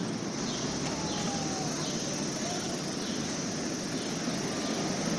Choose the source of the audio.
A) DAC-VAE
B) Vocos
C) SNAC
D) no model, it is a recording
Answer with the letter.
D